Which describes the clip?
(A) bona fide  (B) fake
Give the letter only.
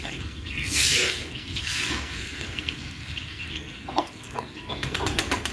B